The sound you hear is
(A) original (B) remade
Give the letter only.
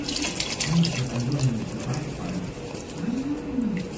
A